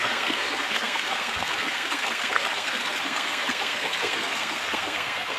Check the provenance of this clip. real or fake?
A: fake